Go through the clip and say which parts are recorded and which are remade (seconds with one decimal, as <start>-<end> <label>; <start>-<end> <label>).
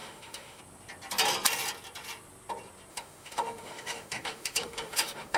0.0-0.6 remade; 0.6-2.9 recorded; 2.9-5.4 remade